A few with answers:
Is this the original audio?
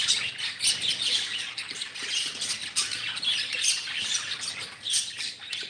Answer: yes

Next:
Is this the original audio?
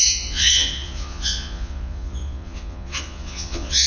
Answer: no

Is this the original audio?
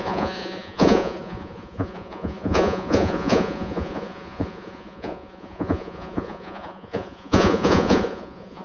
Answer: no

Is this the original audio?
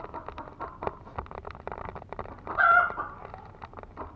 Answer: yes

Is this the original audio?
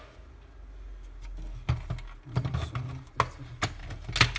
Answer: yes